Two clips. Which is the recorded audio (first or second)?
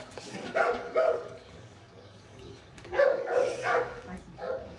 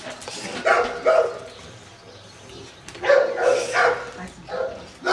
second